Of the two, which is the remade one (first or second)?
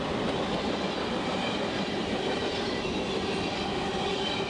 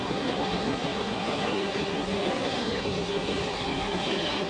second